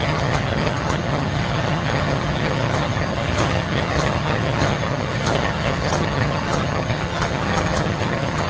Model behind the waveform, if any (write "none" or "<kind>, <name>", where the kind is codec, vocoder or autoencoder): vocoder, HiFi-GAN